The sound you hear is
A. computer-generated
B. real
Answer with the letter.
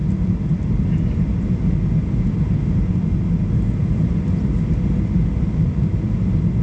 B